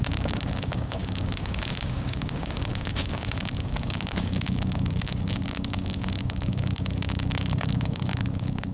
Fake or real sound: fake